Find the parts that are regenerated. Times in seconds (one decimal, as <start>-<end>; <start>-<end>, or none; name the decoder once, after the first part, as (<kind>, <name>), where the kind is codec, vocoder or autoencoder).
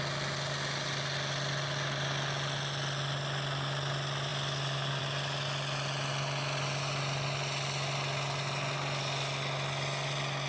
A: none